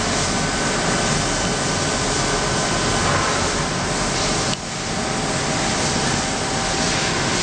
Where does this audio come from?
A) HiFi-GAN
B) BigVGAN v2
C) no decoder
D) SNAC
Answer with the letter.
C